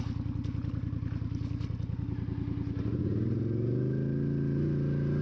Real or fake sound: real